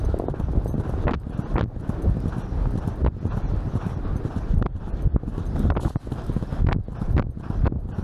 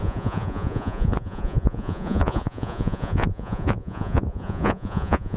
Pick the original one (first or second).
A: first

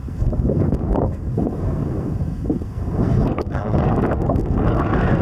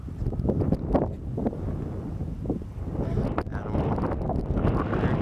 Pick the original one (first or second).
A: second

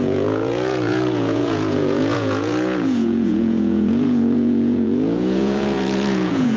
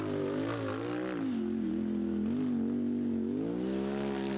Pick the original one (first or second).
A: second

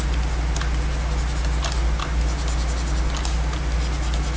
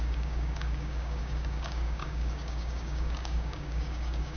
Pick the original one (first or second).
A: first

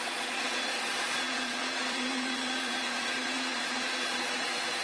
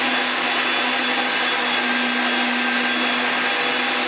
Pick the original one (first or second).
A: second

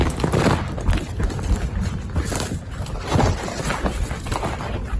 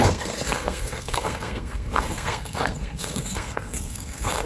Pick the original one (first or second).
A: first